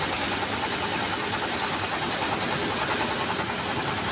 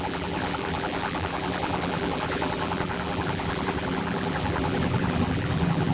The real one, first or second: first